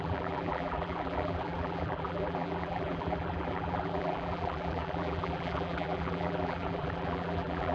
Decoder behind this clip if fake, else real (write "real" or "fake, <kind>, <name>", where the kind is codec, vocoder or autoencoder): fake, vocoder, BigVGAN v2